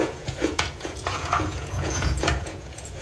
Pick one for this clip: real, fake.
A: fake